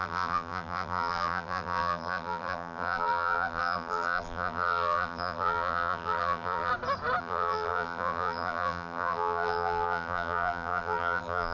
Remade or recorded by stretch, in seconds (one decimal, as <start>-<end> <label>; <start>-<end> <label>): 0.0-6.7 remade; 6.7-7.2 recorded; 7.2-11.5 remade